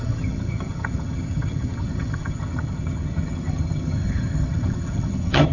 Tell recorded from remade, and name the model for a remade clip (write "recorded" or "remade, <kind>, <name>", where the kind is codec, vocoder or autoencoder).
remade, vocoder, HiFi-GAN